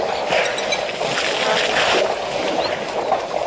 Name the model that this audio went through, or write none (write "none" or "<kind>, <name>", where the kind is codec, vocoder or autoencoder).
none